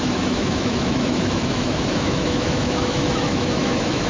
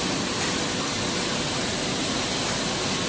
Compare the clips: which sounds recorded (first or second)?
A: second